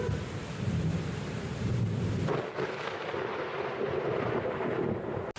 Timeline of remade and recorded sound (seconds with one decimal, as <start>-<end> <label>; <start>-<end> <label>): 0.0-0.9 recorded; 0.9-1.8 remade; 1.8-5.4 recorded